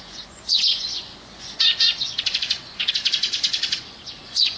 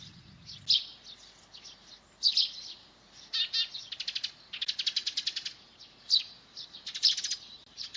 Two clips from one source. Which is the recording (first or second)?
second